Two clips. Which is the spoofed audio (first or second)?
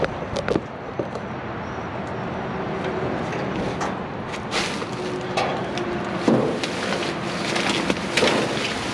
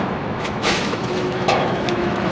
second